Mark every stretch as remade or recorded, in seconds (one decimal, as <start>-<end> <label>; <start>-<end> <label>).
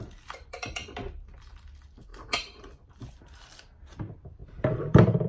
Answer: 0.0-5.3 remade